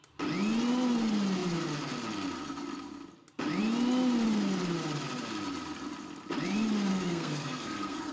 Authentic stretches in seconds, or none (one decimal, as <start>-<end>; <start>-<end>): 0.0-6.9